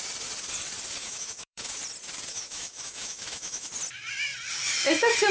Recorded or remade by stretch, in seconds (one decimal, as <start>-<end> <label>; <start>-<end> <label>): 0.0-1.0 recorded; 1.0-1.8 remade; 1.8-2.3 recorded; 2.3-3.7 remade; 3.7-5.3 recorded